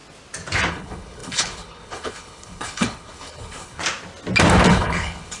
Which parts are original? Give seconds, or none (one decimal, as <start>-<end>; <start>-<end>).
0.0-0.7; 3.8-4.7